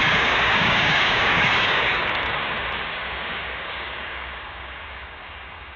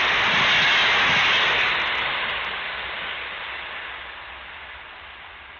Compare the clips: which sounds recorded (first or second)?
second